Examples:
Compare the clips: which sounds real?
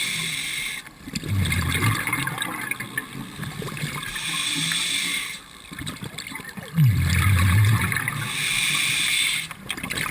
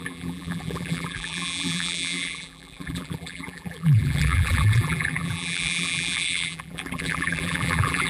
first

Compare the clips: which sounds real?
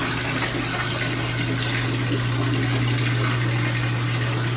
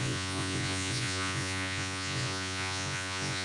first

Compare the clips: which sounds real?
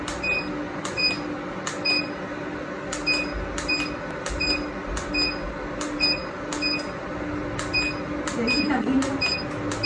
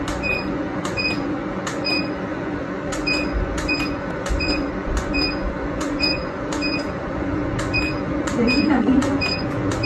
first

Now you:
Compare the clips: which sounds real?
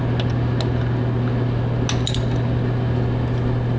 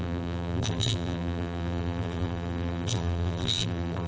first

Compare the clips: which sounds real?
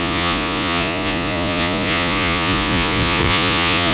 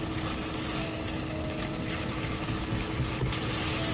second